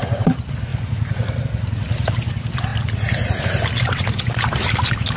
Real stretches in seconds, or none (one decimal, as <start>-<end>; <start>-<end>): 0.0-5.2